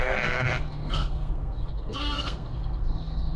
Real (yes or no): no